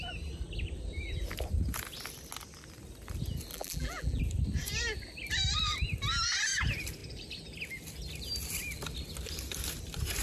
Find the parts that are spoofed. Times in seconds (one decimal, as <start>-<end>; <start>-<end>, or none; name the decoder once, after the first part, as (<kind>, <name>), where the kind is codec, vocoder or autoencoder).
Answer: 3.5-4.2 (vocoder, BigVGAN v2)